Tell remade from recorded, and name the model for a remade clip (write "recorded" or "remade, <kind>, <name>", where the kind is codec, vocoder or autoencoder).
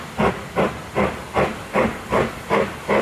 recorded